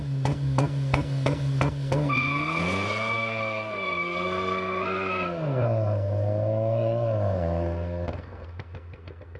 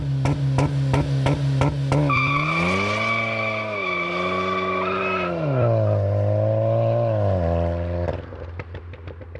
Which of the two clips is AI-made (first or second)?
first